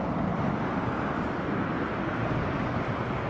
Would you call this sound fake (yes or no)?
no